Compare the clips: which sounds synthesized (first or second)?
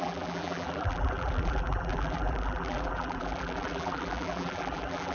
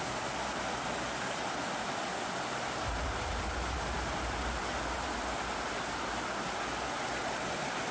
first